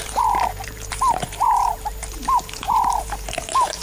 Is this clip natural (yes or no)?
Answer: no